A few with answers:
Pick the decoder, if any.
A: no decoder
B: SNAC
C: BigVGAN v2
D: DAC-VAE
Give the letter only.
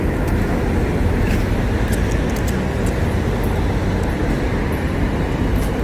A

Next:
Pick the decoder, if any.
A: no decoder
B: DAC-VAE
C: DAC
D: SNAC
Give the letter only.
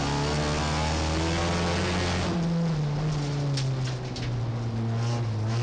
A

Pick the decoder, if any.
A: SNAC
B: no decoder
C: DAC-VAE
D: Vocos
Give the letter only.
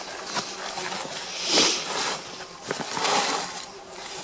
B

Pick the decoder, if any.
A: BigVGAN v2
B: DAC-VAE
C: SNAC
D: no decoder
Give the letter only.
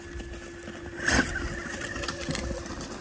D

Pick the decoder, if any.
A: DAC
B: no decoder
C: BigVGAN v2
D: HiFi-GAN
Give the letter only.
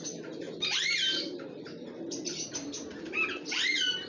C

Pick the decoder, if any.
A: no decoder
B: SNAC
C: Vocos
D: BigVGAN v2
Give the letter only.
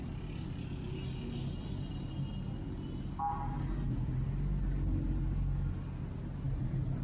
A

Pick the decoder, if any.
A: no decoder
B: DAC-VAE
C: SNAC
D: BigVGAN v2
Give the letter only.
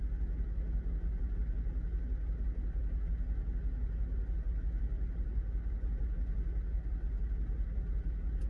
A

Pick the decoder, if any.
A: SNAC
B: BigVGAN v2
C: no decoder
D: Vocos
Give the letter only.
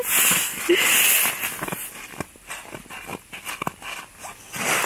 C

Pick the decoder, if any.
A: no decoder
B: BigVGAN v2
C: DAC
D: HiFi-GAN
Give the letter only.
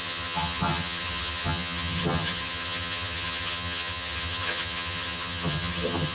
D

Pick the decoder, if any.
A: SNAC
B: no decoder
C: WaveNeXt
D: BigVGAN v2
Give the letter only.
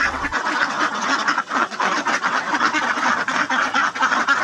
C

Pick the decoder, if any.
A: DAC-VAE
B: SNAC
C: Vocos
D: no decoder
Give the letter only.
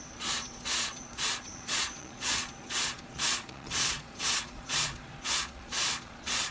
C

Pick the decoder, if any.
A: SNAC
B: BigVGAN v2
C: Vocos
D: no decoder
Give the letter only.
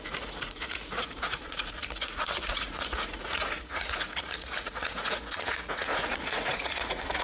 C